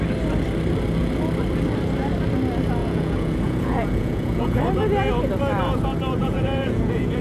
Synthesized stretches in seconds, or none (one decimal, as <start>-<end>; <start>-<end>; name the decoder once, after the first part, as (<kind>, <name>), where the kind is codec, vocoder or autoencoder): 2.8-4.6 (vocoder, Vocos); 6.2-7.2